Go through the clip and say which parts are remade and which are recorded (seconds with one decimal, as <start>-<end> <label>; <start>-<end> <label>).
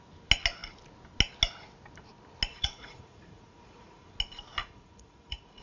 0.0-2.5 recorded; 2.5-4.1 remade; 4.1-4.6 recorded; 4.6-5.6 remade